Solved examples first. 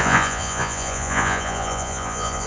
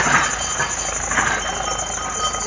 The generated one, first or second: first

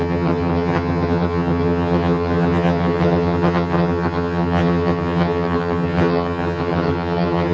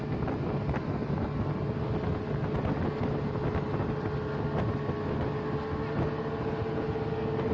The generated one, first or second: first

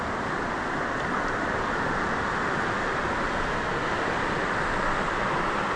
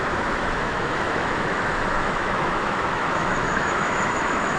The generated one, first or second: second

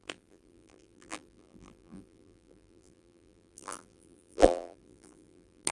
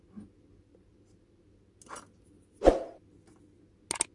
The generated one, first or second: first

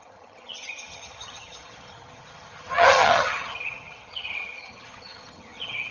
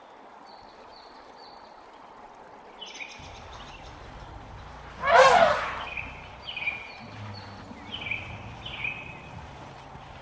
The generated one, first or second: first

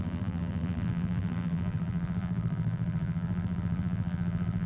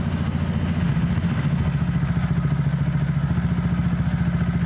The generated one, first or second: first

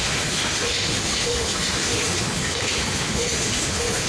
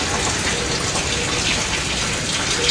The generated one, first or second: first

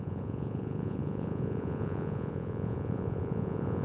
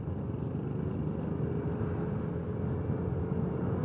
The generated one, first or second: first